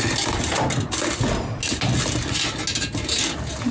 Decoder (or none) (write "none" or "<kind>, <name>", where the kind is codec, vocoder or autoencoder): none